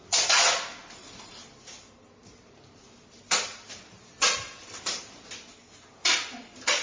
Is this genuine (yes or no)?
yes